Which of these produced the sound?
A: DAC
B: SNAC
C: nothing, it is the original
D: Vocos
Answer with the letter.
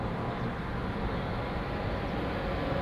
C